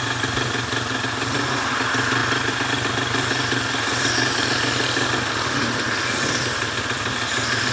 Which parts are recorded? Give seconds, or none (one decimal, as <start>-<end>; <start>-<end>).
0.0-7.7